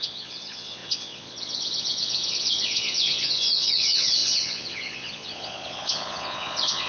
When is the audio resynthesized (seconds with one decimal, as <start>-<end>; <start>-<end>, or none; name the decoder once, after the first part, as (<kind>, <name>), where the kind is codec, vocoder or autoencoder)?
0.0-6.9 (vocoder, Vocos)

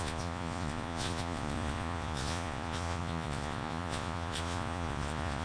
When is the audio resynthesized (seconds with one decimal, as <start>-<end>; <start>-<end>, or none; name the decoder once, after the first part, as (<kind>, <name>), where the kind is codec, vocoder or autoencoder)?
0.0-5.4 (vocoder, Vocos)